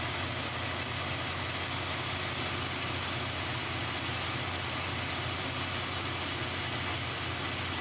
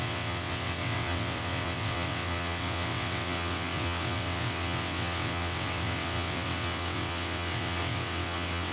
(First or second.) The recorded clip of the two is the first